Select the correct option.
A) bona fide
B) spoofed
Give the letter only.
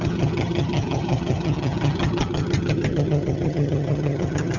B